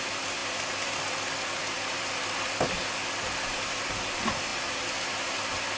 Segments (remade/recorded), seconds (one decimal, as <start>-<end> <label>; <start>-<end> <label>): 0.0-5.8 recorded